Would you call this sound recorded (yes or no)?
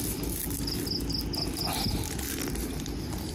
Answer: yes